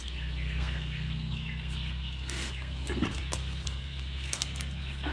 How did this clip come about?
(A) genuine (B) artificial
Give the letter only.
B